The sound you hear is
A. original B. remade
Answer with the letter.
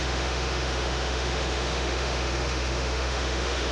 B